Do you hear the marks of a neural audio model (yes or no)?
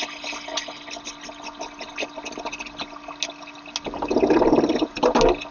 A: no